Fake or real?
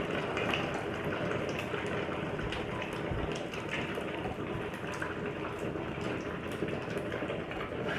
real